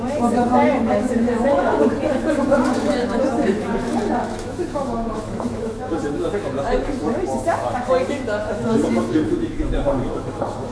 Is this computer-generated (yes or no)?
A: yes